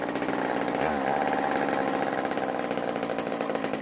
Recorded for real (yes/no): yes